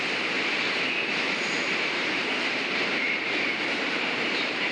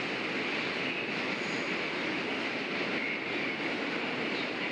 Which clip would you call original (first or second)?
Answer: second